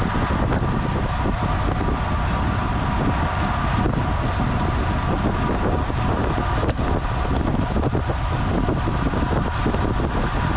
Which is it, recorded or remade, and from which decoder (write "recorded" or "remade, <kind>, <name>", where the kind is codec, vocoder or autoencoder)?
recorded